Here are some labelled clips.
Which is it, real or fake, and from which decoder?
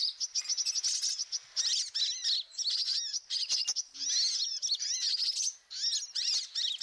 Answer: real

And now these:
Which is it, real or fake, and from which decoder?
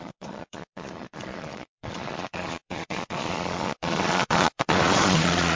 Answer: fake, vocoder, Vocos